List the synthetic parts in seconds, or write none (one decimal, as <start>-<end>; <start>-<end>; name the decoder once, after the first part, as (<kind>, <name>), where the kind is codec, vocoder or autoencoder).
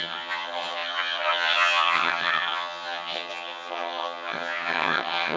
0.0-5.4 (vocoder, HiFi-GAN)